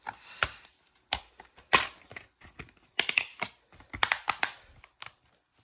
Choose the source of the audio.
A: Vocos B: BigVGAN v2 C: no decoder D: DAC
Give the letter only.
B